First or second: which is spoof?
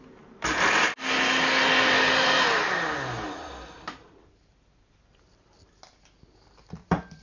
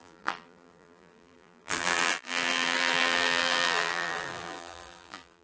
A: second